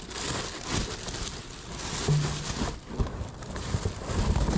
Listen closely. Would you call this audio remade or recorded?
recorded